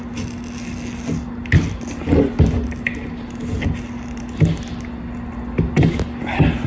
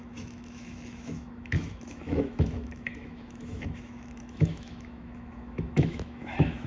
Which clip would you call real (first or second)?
first